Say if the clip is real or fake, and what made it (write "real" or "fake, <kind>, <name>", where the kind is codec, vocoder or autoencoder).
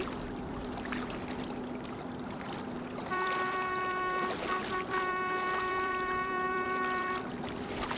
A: fake, vocoder, BigVGAN v2